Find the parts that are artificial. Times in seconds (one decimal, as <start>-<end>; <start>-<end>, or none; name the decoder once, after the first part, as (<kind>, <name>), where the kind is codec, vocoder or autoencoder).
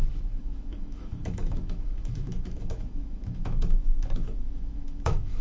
0.0-5.4 (autoencoder, DAC-VAE)